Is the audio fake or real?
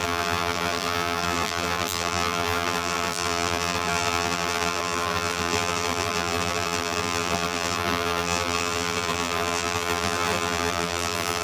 fake